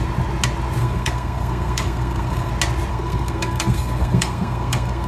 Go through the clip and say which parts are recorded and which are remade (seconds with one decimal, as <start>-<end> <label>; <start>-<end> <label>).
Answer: 0.0-0.8 recorded; 0.8-2.5 remade; 2.5-2.9 recorded; 2.9-5.1 remade